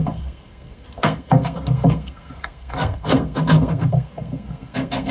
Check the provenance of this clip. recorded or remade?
remade